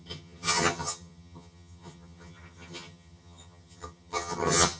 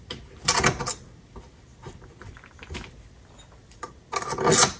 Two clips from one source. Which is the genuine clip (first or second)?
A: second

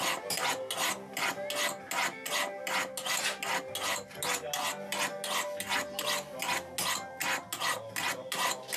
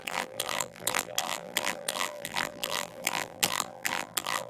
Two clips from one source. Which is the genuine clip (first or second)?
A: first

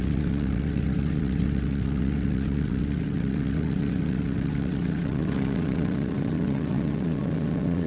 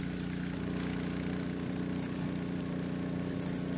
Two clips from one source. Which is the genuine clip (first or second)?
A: second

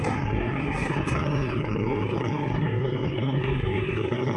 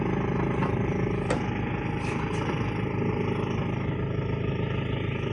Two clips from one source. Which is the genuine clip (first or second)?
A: second